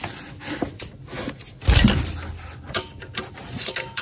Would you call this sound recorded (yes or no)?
yes